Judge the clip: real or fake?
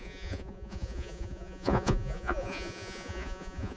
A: fake